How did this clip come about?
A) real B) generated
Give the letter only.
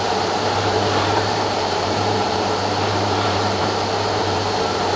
B